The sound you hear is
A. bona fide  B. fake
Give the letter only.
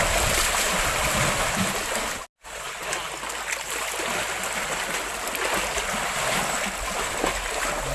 A